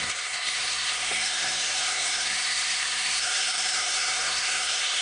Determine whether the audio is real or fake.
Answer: fake